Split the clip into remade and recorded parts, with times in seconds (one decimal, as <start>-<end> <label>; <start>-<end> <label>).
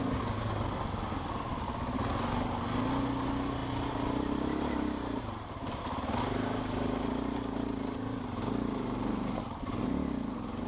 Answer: 0.0-10.7 recorded